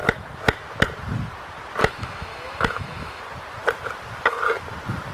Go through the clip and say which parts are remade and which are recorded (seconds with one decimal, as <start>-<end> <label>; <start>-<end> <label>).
0.0-1.8 recorded; 1.8-3.2 remade; 3.2-5.1 recorded